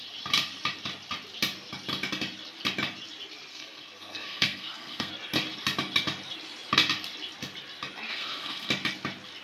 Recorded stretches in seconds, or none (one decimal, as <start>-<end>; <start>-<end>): 0.0-3.5; 5.1-8.1; 8.7-9.4